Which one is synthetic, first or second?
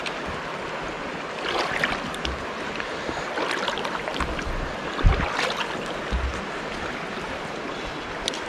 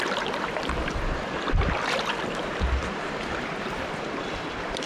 second